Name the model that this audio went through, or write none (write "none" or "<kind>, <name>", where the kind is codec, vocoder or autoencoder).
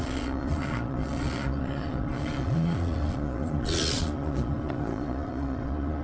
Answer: vocoder, Vocos